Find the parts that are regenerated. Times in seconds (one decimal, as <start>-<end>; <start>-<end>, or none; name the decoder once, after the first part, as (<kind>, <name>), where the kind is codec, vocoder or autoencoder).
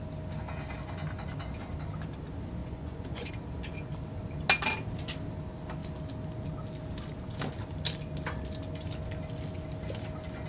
2.6-3.3 (vocoder, Vocos)